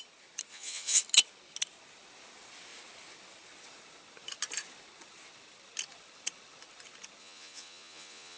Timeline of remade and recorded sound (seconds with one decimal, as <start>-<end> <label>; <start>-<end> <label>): 0.0-0.5 recorded; 0.5-1.0 remade; 1.0-7.2 recorded; 7.2-8.4 remade